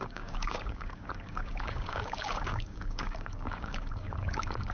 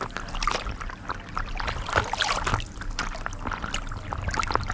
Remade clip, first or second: first